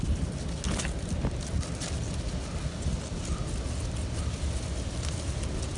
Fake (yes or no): no